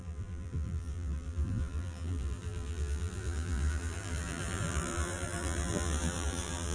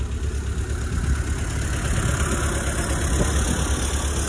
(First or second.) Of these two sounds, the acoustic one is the second